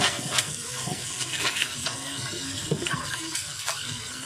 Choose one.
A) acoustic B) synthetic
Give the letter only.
B